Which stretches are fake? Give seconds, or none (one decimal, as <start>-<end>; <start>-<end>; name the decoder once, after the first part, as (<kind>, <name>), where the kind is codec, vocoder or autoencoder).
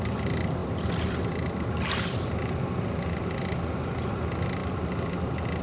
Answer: none